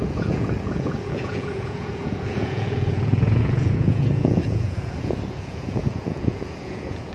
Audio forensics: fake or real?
fake